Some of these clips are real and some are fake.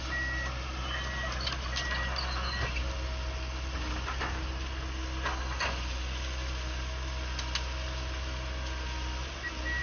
real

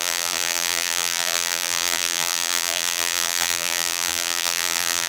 fake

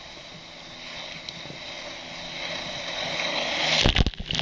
real